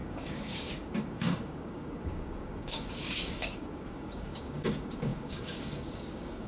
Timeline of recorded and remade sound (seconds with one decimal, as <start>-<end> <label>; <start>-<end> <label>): 0.0-6.5 remade